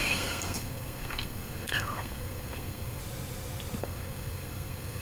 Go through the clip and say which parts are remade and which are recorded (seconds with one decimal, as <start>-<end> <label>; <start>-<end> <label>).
0.0-3.0 remade; 3.0-3.8 recorded; 3.8-5.0 remade